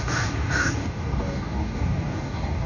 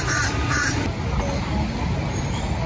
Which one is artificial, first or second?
first